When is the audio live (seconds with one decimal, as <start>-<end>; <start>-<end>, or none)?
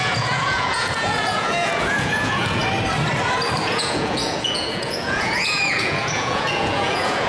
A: 2.6-3.6